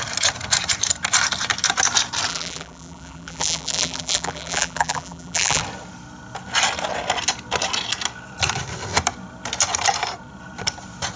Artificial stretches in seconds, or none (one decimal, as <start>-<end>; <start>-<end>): 2.3-5.6